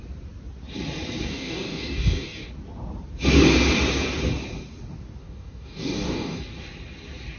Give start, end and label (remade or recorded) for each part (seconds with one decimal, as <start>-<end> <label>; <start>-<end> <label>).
0.0-1.3 recorded; 1.3-2.5 remade; 2.5-5.2 recorded; 5.2-6.4 remade; 6.4-7.4 recorded